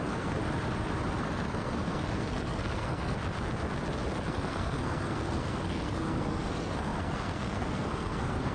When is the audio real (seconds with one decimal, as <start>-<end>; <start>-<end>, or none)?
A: 0.4-1.2; 3.2-4.2